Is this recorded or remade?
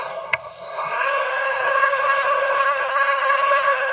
remade